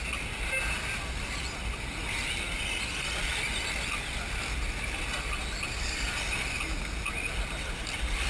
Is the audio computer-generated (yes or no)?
no